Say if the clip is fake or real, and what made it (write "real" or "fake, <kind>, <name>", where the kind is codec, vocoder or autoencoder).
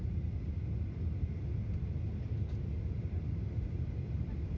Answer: real